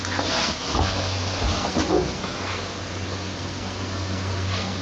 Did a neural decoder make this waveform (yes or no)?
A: yes